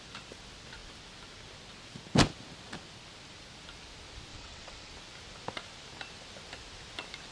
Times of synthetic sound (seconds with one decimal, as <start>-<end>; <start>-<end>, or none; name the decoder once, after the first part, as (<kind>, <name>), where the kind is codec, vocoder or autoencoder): 4.3-4.9 (vocoder, WaveNeXt)